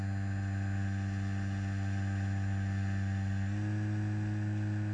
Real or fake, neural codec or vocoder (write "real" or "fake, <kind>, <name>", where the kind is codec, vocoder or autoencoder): real